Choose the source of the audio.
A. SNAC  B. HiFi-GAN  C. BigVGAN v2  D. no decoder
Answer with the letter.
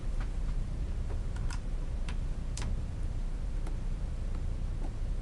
C